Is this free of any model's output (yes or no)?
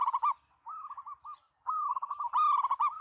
yes